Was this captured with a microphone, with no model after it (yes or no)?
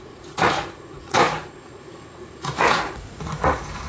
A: no